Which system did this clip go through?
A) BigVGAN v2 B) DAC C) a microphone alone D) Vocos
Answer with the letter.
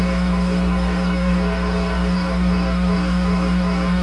B